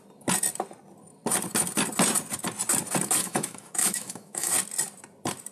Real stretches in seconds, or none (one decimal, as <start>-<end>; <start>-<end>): 0.0-3.2; 4.5-5.5